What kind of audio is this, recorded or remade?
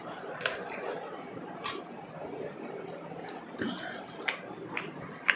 remade